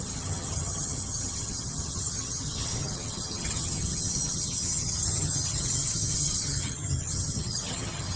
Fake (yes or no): yes